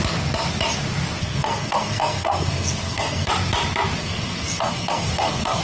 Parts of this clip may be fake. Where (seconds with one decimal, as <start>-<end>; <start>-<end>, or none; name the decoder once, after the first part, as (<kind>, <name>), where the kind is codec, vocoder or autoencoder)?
1.2-3.3 (codec, SNAC); 4.0-5.6